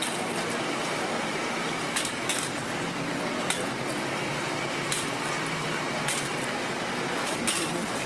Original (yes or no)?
no